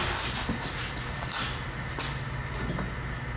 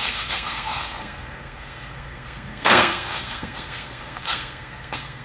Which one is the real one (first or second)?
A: first